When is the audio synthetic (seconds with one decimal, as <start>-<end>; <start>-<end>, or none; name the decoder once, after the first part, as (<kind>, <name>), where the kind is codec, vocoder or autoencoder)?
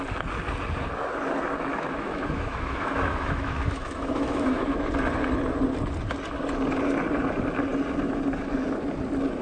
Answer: 1.7-4.8 (autoencoder, DAC-VAE)